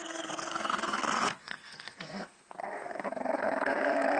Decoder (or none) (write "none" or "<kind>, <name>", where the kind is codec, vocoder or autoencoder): codec, SNAC